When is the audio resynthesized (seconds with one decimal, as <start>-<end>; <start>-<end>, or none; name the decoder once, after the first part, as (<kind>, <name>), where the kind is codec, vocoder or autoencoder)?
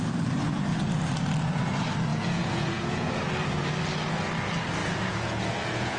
2.1-3.2 (vocoder, Vocos); 4.8-6.0